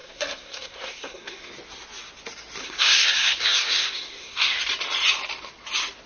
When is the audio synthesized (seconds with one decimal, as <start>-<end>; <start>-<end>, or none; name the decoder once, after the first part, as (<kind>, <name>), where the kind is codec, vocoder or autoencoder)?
0.0-1.5 (codec, SNAC); 2.6-4.6

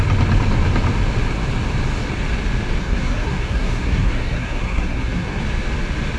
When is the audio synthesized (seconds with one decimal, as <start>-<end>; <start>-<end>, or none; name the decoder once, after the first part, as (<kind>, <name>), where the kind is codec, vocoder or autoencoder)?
2.8-5.4 (codec, SNAC)

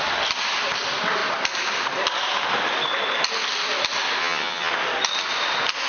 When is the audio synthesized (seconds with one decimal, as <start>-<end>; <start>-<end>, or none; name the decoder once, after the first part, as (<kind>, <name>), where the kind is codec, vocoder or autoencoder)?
4.2-4.7 (vocoder, HiFi-GAN)

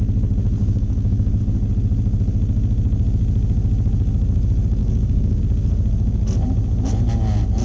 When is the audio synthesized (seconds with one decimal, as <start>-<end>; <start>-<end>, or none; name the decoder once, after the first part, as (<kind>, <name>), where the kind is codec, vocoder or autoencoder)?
0.6-1.4 (codec, DAC); 4.8-5.4

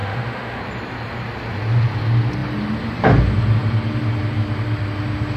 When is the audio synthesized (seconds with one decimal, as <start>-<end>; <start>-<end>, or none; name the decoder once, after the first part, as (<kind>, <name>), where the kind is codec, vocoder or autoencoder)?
0.0-0.6 (autoencoder, DAC-VAE)

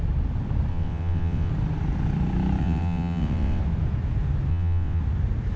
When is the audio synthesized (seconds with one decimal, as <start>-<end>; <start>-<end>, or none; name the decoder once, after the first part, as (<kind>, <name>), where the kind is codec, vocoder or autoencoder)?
0.7-1.5 (vocoder, WaveNeXt); 2.6-3.6; 4.5-5.0

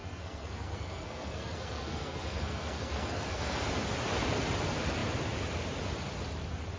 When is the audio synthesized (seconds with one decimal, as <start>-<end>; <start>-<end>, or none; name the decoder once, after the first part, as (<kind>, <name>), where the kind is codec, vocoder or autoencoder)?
0.0-3.6 (codec, SNAC)